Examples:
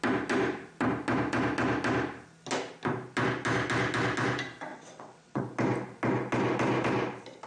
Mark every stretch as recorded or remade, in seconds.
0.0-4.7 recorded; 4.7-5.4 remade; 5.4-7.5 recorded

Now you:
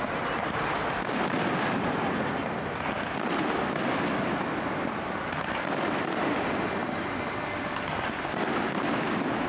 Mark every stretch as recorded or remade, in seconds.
0.0-9.5 recorded

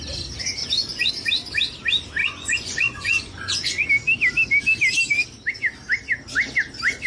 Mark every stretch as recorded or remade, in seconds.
0.0-0.6 recorded; 0.6-1.1 remade; 1.1-2.2 recorded; 2.2-3.9 remade; 3.9-7.1 recorded

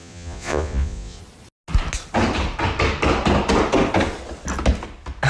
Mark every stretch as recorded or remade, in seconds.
0.0-1.2 remade; 1.2-5.3 recorded

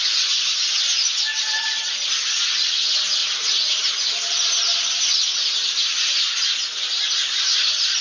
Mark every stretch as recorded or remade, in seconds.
0.0-3.2 recorded; 3.2-3.8 remade; 3.8-8.0 recorded

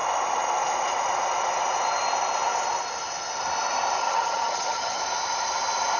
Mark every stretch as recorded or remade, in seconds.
0.0-4.0 recorded; 4.0-5.0 remade; 5.0-6.0 recorded

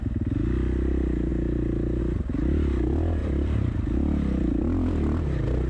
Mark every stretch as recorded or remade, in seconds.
0.0-1.3 recorded; 1.3-2.0 remade; 2.0-3.2 recorded; 3.2-4.6 remade; 4.6-5.7 recorded

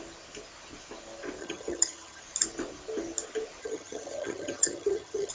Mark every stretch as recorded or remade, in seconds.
0.0-1.4 recorded; 1.4-2.2 remade; 2.2-3.6 recorded; 3.6-5.3 remade